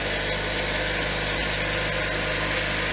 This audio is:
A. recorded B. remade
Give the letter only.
A